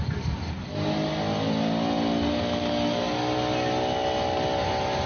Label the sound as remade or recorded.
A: recorded